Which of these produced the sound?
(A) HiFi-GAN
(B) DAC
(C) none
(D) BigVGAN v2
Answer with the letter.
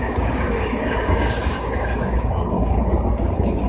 B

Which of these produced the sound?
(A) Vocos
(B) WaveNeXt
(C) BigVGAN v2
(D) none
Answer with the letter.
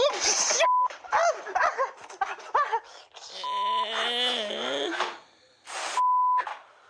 D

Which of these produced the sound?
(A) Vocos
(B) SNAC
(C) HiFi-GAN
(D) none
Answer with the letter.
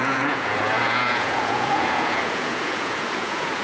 A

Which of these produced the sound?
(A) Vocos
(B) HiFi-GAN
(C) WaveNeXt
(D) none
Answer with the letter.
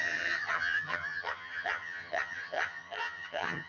B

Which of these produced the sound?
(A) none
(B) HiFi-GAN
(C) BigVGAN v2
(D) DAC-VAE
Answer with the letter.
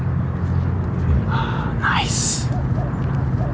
A